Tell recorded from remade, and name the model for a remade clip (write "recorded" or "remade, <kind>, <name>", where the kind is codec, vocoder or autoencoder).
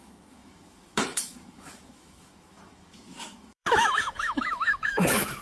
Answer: remade, autoencoder, DAC-VAE